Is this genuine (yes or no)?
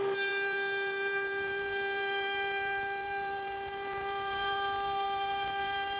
no